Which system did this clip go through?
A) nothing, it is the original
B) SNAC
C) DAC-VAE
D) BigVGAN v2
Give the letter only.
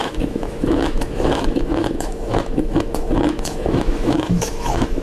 C